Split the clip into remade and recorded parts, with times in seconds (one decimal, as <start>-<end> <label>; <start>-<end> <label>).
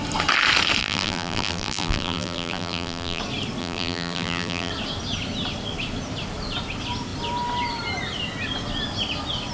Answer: 0.0-0.8 recorded; 0.8-3.2 remade; 3.2-3.6 recorded; 3.6-4.7 remade; 4.7-9.5 recorded